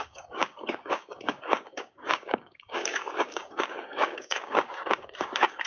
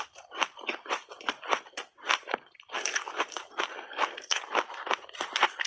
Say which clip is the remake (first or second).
first